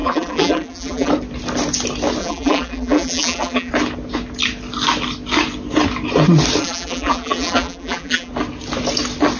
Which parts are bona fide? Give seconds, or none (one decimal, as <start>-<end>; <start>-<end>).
1.1-2.2; 3.7-6.6; 8.3-9.4